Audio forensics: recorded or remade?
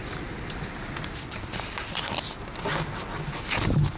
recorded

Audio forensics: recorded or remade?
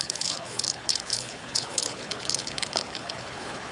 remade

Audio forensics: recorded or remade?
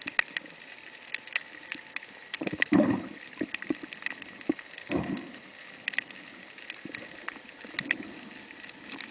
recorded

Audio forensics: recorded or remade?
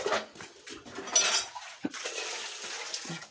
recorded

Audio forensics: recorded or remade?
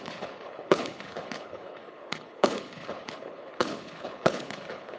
remade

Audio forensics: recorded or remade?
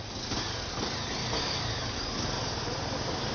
recorded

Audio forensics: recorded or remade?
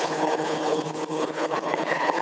remade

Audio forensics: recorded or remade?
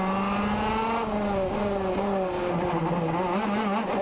recorded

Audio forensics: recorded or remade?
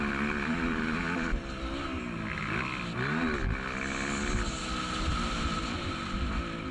recorded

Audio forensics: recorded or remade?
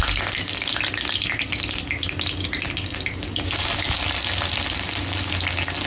recorded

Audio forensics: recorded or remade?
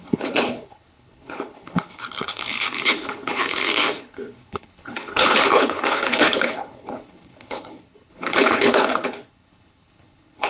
remade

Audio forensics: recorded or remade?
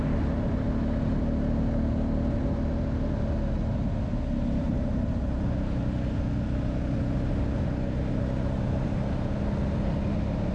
recorded